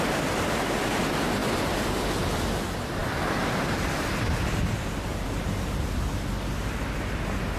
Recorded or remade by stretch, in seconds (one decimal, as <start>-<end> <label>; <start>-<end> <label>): 0.0-7.6 recorded